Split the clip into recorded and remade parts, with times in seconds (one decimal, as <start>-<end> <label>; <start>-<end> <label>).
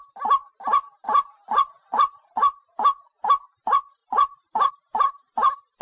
0.0-4.0 recorded; 4.0-4.7 remade; 4.7-5.8 recorded